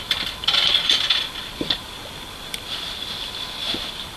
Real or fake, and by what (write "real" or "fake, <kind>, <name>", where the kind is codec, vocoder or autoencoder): real